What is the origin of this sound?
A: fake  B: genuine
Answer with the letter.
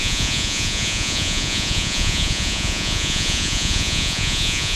A